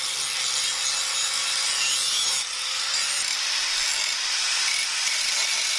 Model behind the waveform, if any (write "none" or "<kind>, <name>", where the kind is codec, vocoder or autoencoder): none